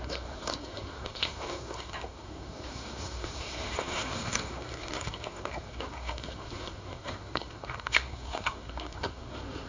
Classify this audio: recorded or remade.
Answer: remade